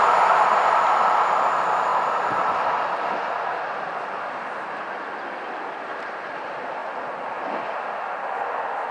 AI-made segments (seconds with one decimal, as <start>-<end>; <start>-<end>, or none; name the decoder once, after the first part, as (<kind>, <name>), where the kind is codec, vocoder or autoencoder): none